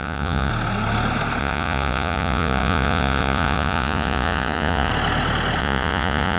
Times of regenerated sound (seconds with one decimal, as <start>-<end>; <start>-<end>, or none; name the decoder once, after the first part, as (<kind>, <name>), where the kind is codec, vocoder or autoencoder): 0.0-0.5 (vocoder, Vocos); 1.4-4.9; 5.6-6.4